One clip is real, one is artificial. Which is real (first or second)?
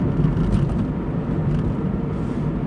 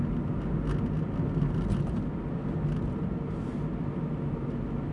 second